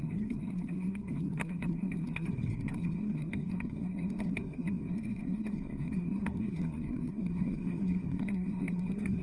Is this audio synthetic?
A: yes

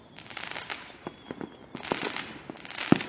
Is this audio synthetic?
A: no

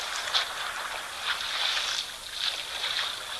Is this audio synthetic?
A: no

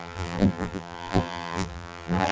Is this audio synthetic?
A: yes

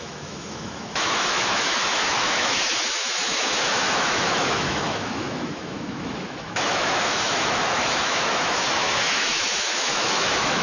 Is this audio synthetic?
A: yes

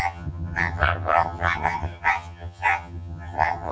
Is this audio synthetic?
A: yes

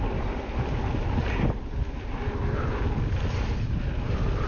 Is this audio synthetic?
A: no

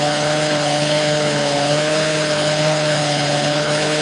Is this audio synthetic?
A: yes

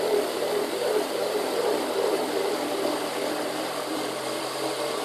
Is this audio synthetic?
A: yes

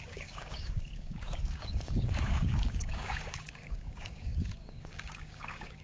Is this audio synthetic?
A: yes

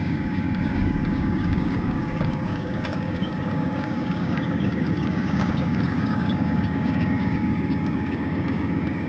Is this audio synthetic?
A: yes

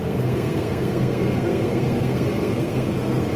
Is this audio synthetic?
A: yes